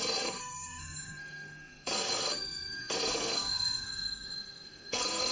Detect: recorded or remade remade